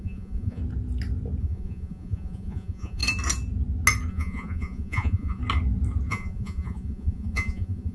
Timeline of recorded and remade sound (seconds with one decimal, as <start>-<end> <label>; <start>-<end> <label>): 0.0-0.6 remade; 0.6-1.4 recorded; 1.4-3.0 remade; 3.0-4.1 recorded; 4.1-5.4 remade; 5.4-6.1 recorded; 6.1-7.9 remade